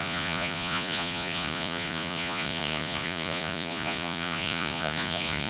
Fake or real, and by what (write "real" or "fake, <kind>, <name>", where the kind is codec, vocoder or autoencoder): fake, vocoder, Vocos